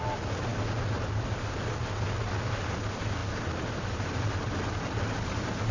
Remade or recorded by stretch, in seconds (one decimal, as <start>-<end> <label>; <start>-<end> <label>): 0.0-5.7 recorded